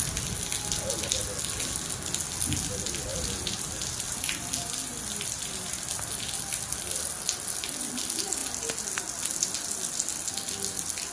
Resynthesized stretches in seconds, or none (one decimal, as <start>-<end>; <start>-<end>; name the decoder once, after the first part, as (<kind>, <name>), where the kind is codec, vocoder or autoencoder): none